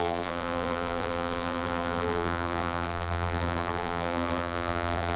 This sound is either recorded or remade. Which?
remade